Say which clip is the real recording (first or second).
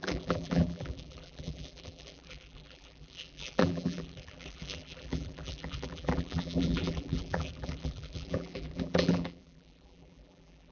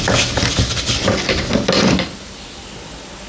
second